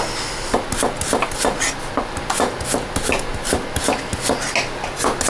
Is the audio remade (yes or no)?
no